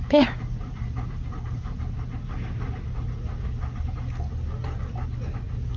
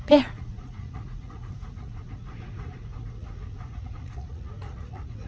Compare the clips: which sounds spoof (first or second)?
second